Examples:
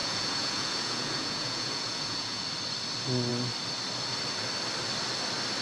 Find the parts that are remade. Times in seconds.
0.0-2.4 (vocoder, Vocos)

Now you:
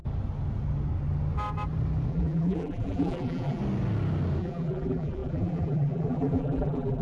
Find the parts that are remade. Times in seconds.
2.1-3.6 (vocoder, BigVGAN v2); 4.4-7.0

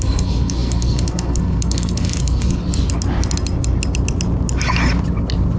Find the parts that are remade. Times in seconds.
0.0-2.6 (codec, SNAC)

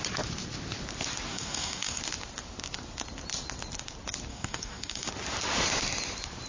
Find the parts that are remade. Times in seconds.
1.3-2.0 (codec, DAC); 4.3-5.1

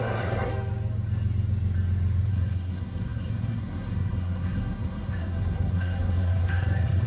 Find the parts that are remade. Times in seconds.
0.0-0.5 (codec, SNAC); 2.3-7.1